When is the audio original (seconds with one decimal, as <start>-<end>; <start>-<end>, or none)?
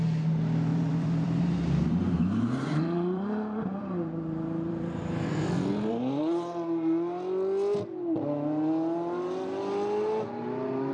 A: 0.0-0.7; 5.1-10.9